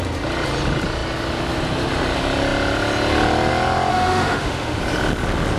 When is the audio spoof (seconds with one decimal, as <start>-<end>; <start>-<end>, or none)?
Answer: 3.9-4.8